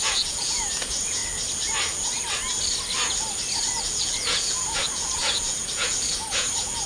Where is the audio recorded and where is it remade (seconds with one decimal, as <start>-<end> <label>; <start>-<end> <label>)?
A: 0.0-1.2 remade; 1.2-3.8 recorded; 3.8-6.9 remade